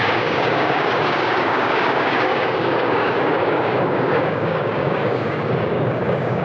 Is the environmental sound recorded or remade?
remade